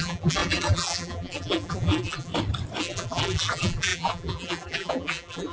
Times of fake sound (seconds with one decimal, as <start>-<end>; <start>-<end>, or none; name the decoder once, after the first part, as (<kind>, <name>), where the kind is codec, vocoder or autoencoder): 0.0-2.3 (vocoder, BigVGAN v2); 2.8-5.5